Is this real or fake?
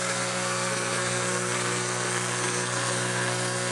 fake